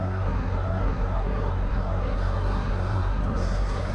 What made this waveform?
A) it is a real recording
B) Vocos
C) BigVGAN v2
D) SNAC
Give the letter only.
D